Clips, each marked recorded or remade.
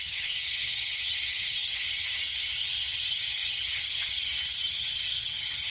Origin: remade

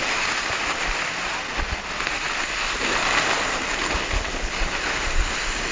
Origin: recorded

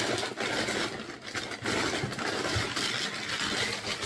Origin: recorded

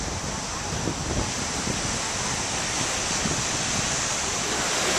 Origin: recorded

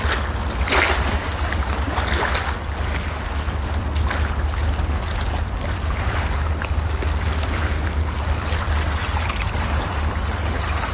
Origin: recorded